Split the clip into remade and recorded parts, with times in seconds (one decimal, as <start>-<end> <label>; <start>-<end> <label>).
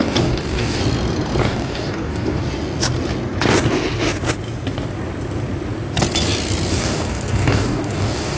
0.0-0.8 remade; 0.8-1.4 recorded; 1.4-2.4 remade; 2.4-6.7 recorded; 6.7-8.4 remade